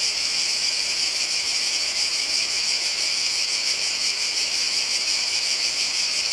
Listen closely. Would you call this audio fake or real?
fake